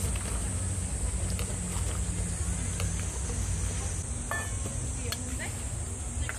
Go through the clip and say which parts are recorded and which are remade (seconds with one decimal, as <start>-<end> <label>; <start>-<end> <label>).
0.0-6.4 recorded